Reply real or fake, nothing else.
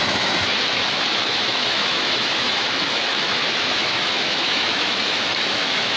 fake